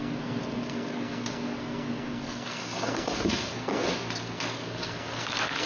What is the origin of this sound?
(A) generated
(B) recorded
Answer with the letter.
A